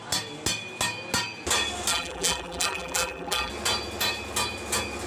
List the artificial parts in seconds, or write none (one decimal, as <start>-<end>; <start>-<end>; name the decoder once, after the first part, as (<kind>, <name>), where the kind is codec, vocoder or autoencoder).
1.9-3.5 (vocoder, BigVGAN v2)